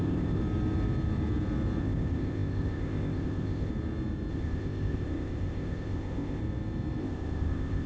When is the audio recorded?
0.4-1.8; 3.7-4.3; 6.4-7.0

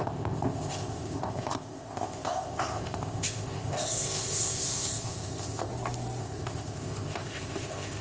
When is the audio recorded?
5.7-6.2

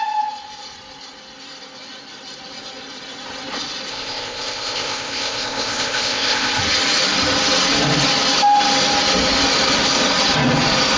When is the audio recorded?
0.0-3.9; 6.6-11.0